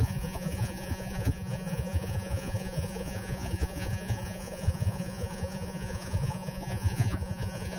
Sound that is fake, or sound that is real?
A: fake